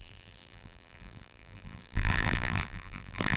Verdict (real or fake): fake